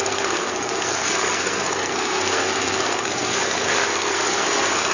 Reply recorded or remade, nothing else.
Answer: remade